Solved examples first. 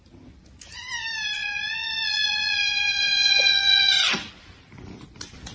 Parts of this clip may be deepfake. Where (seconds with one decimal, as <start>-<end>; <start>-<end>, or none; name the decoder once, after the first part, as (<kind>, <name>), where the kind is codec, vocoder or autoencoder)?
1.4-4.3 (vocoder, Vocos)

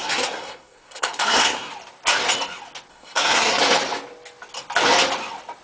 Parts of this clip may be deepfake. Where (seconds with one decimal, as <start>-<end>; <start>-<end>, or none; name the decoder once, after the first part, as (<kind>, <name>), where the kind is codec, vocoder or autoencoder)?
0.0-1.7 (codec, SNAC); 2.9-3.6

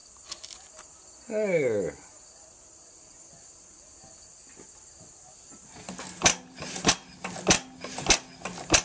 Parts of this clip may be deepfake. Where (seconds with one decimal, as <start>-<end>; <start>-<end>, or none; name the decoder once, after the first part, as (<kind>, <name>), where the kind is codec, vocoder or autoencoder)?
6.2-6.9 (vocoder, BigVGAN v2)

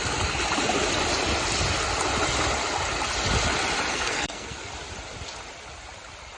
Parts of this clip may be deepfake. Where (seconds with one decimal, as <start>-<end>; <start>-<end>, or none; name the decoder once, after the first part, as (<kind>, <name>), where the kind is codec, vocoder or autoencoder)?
3.9-4.7 (codec, SNAC)

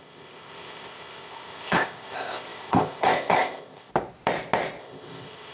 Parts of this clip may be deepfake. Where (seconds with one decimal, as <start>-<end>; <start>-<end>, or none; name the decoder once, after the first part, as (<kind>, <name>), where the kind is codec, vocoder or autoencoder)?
0.0-3.9 (codec, ZipCodec); 4.8-5.5

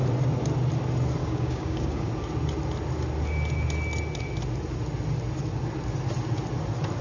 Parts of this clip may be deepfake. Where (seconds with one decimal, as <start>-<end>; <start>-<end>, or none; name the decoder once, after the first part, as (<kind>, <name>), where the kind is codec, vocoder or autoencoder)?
1.2-2.1 (codec, DAC)

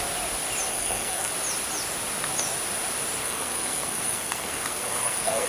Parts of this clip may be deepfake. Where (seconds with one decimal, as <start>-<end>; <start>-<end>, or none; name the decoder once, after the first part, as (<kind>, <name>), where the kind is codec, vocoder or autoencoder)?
0.7-1.3 (codec, SNAC); 3.2-5.5

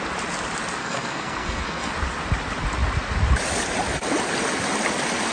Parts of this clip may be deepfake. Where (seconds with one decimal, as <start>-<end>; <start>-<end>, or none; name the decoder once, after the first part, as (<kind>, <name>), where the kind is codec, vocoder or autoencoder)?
0.8-1.9 (codec, SNAC)